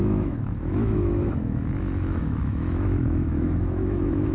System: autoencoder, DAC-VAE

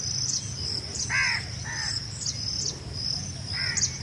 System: none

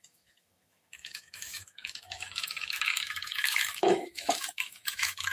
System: autoencoder, DAC-VAE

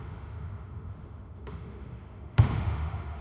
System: autoencoder, DAC-VAE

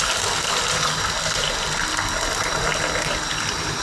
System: none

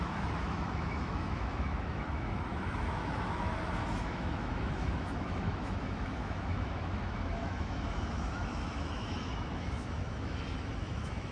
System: autoencoder, DAC-VAE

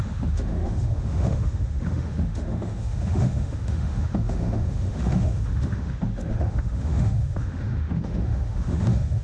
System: autoencoder, DAC-VAE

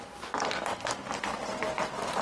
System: none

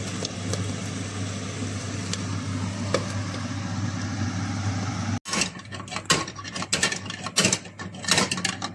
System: none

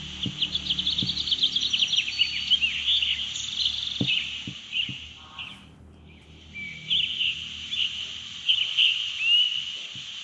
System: none